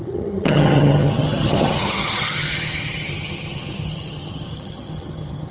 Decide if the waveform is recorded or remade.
remade